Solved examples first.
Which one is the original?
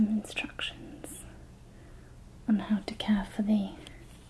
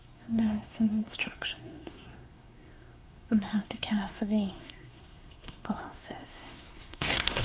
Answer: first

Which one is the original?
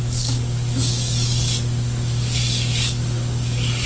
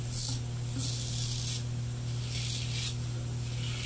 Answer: second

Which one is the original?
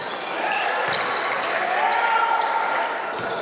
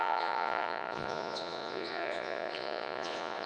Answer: first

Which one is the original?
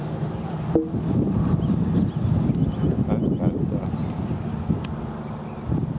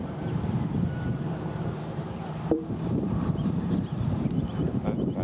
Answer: first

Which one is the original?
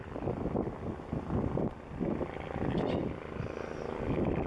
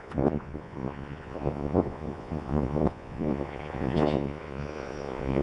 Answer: first